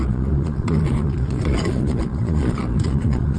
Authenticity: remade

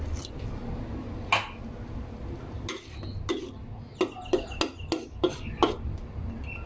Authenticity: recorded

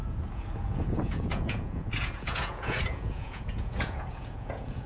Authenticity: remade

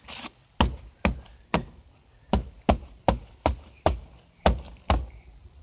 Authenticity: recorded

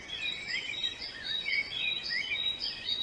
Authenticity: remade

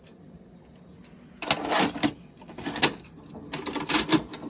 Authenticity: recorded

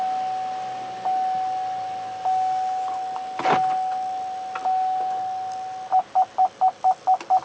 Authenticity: recorded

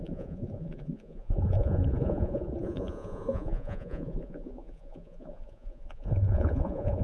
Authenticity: remade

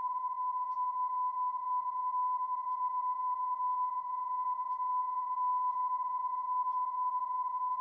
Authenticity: remade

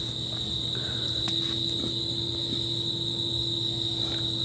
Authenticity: recorded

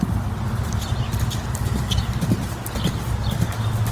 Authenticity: recorded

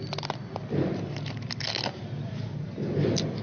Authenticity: recorded